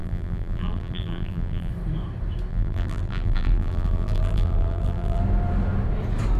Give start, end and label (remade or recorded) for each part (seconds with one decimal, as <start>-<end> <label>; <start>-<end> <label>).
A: 0.0-1.7 remade; 1.7-2.5 recorded; 2.5-5.2 remade; 5.2-6.4 recorded